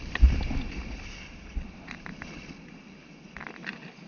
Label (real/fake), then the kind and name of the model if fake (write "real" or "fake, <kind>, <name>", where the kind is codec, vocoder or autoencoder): real